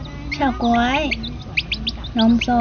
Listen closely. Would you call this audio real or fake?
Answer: real